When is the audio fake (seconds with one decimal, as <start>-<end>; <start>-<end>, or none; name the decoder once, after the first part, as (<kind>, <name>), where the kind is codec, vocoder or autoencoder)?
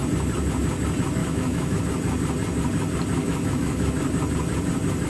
1.2-1.8 (autoencoder, DAC-VAE); 3.2-3.9